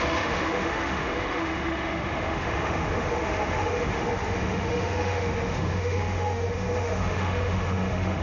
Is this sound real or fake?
fake